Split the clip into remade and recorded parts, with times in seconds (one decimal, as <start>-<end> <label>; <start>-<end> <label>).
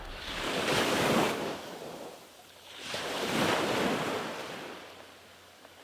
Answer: 0.0-1.8 remade; 1.8-5.3 recorded; 5.3-5.8 remade